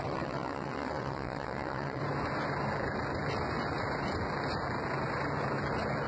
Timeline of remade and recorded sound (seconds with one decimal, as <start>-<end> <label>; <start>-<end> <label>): 0.0-2.0 remade; 2.0-6.1 recorded